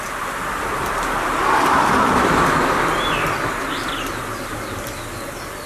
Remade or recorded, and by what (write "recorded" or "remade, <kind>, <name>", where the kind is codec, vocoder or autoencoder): remade, vocoder, BigVGAN v2